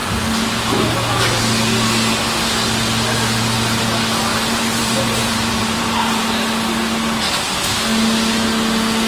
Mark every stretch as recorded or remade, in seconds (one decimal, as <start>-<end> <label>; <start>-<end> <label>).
0.0-4.3 recorded; 4.3-6.2 remade; 6.2-9.1 recorded